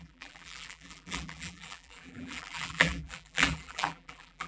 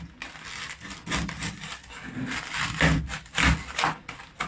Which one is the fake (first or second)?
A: first